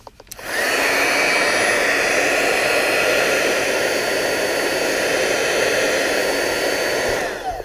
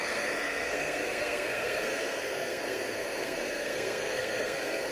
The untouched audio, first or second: first